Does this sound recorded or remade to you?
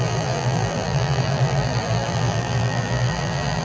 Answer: remade